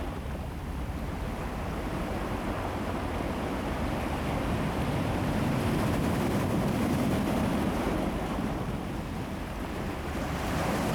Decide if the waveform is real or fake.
fake